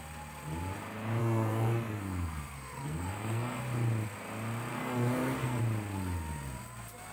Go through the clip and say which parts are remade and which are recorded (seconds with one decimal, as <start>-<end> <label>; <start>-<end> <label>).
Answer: 0.0-1.2 recorded; 1.2-3.6 remade; 3.6-4.7 recorded; 4.7-5.6 remade; 5.6-7.1 recorded